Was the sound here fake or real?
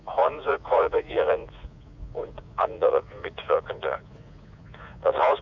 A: fake